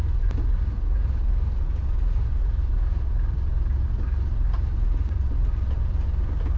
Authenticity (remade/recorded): remade